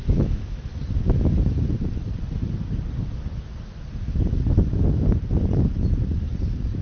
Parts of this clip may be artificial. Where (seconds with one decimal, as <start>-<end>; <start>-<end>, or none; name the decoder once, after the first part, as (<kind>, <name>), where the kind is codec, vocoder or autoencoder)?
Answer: 0.0-0.8 (autoencoder, DAC-VAE)